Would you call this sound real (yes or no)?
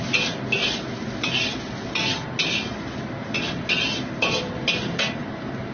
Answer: yes